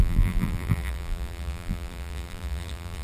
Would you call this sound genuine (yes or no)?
no